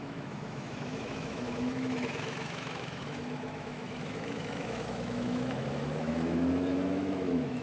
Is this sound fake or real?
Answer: fake